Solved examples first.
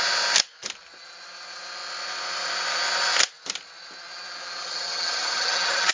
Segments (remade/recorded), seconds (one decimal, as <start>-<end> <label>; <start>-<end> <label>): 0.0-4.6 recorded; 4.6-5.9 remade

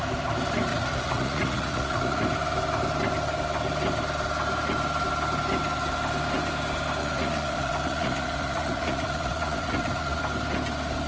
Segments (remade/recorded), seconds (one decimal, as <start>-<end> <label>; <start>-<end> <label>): 0.0-0.7 recorded; 0.7-2.2 remade; 2.2-7.0 recorded; 7.0-10.2 remade; 10.2-11.1 recorded

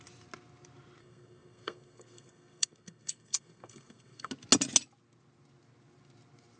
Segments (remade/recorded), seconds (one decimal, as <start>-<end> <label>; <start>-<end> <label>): 0.0-1.0 recorded; 1.0-4.3 remade; 4.3-6.6 recorded

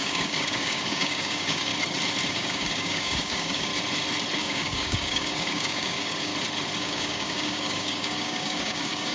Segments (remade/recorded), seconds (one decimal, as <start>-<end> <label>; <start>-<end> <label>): 0.0-1.7 remade; 1.7-2.3 recorded; 2.3-3.7 remade; 3.7-4.4 recorded; 4.4-6.3 remade; 6.3-6.8 recorded; 6.8-9.1 remade

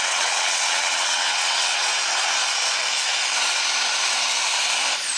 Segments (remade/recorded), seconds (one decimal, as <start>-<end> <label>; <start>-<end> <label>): 0.0-1.9 remade; 1.9-5.2 recorded

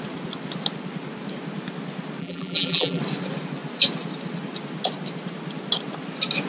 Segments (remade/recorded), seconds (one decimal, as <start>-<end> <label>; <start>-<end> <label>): 0.0-2.2 recorded; 2.2-3.0 remade; 3.0-6.5 recorded

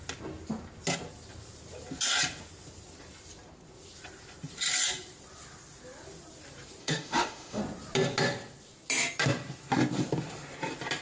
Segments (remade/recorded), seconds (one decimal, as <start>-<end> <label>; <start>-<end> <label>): 0.0-6.8 recorded; 6.8-7.6 remade; 7.6-11.0 recorded